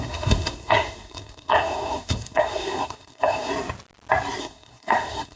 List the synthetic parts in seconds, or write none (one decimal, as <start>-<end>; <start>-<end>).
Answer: 0.0-3.5; 4.4-5.4